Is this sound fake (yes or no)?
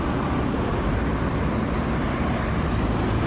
yes